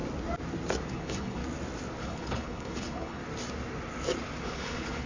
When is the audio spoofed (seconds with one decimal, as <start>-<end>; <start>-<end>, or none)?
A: 0.9-1.4; 2.0-3.2; 4.4-5.1